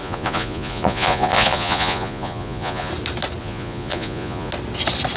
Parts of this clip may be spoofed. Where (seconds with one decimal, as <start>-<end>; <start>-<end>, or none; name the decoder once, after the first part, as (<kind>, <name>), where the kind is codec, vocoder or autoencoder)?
0.0-2.9 (vocoder, Vocos); 3.4-4.5